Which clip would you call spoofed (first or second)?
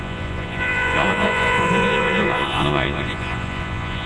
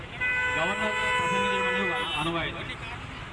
first